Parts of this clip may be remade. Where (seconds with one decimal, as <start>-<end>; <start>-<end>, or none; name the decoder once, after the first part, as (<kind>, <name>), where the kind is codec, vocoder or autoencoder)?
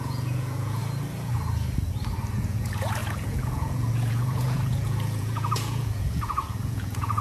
0.0-0.8 (vocoder, Vocos); 2.3-7.2